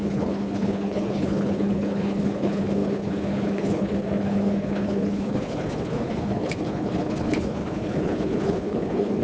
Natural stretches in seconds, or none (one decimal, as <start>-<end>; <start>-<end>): none